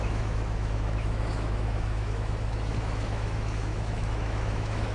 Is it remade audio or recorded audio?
remade